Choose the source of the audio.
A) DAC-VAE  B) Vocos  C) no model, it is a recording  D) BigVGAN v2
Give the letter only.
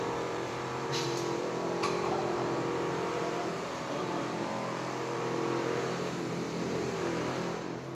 D